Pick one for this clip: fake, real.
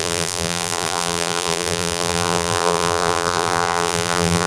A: fake